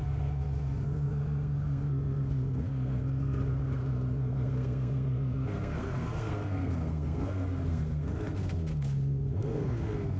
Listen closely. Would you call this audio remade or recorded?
remade